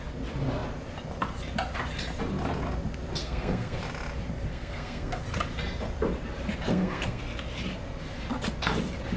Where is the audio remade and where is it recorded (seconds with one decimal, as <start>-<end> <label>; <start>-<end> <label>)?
0.0-3.2 recorded; 3.2-3.8 remade; 3.8-4.5 recorded; 4.5-5.2 remade; 5.2-6.7 recorded; 6.7-7.2 remade; 7.2-9.2 recorded